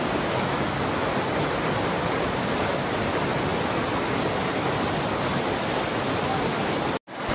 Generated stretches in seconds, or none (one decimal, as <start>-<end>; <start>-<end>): none